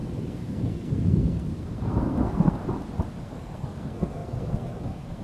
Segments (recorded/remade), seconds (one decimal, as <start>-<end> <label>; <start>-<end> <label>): 0.0-2.6 remade; 2.6-3.2 recorded; 3.2-5.2 remade